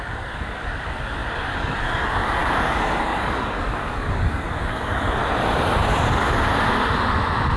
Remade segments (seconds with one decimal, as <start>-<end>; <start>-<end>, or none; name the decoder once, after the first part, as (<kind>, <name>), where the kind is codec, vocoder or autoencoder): 0.0-5.2 (codec, DAC)

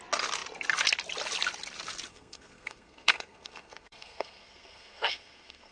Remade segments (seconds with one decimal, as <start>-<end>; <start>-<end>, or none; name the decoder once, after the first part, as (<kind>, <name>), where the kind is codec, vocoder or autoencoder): 2.1-5.7 (codec, SNAC)